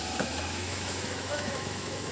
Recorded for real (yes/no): no